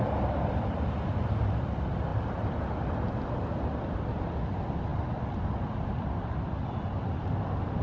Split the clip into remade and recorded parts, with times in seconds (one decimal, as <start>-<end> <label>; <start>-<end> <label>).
0.0-7.8 recorded